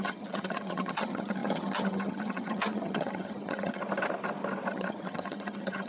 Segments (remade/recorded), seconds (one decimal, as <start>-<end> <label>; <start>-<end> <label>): 0.0-3.8 remade; 3.8-4.7 recorded; 4.7-5.9 remade